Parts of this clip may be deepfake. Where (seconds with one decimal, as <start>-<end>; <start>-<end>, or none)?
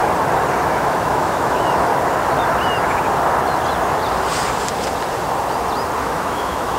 0.8-1.9; 6.0-6.8